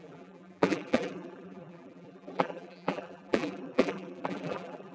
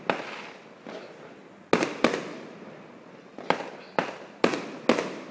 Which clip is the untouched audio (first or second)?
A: second